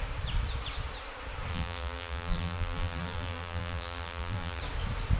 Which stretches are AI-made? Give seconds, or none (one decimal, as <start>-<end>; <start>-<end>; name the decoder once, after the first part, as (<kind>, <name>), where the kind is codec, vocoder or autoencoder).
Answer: 1.5-4.6 (vocoder, BigVGAN v2)